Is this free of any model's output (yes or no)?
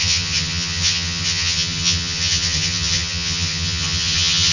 no